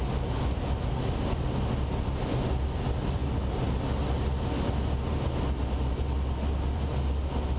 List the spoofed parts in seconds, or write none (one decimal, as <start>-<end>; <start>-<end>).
none